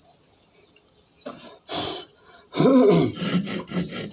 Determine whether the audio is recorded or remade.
recorded